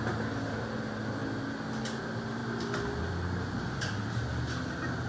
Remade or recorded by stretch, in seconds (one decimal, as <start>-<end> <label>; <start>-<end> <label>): 0.0-5.1 recorded